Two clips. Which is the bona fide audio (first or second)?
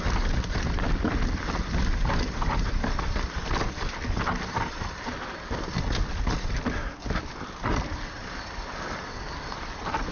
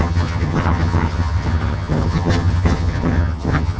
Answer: first